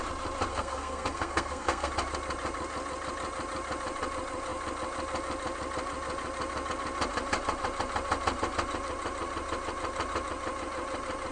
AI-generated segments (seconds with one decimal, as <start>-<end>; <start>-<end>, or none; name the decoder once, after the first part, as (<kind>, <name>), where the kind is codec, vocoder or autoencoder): 0.5-1.9 (codec, SNAC)